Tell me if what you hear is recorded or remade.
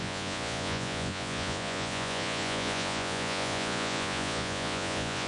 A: remade